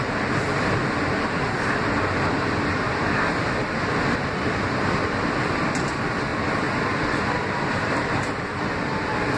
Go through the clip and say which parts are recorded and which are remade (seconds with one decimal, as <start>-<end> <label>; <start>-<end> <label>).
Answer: 0.0-9.4 recorded